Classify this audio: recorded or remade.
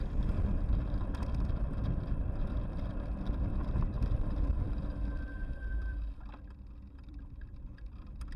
remade